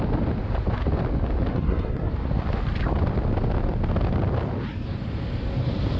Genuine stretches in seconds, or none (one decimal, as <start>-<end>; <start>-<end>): 0.0-1.5; 2.1-6.0